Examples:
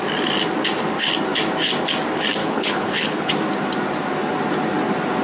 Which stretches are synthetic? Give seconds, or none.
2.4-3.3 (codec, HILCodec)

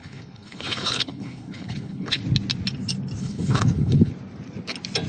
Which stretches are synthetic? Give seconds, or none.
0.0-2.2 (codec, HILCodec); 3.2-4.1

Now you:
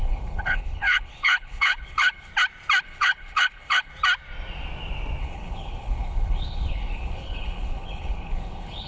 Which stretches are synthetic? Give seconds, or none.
0.0-2.3 (codec, HILCodec); 2.8-3.9; 5.2-8.9

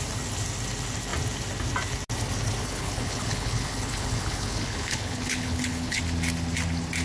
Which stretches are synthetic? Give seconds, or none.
2.6-6.0 (codec, HILCodec)